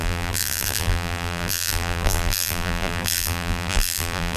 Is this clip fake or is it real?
fake